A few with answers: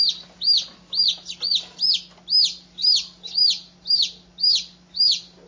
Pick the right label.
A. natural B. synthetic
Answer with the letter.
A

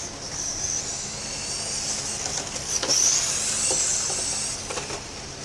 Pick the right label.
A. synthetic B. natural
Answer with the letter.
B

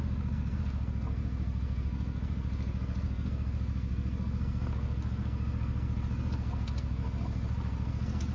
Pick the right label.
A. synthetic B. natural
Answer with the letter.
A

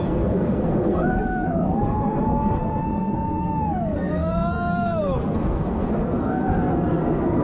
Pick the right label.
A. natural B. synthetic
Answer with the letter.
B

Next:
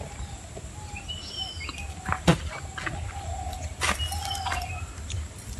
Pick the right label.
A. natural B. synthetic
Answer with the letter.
A